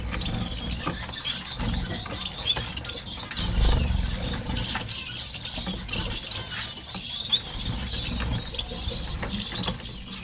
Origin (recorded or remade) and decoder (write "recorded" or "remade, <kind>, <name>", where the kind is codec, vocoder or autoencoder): recorded